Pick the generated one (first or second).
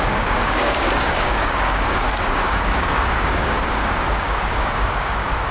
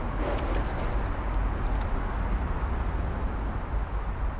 first